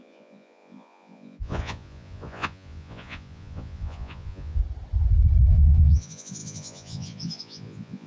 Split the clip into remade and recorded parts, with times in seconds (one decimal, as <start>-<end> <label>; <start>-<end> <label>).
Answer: 0.0-4.6 remade; 4.6-5.5 recorded; 5.5-8.1 remade